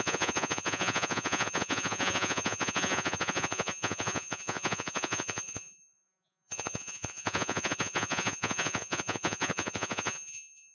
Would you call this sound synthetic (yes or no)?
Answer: yes